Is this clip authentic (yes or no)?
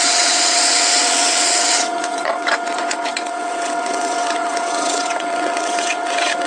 no